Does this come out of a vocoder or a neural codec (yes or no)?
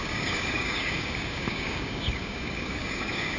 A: yes